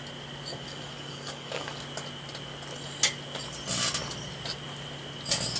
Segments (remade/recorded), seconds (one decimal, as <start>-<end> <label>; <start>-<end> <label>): 0.0-0.5 recorded; 0.5-1.8 remade; 1.8-5.6 recorded